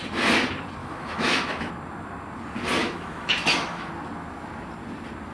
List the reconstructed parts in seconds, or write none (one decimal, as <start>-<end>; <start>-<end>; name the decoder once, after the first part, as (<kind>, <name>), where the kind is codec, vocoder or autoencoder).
0.8-1.7 (autoencoder, DAC-VAE); 2.8-3.9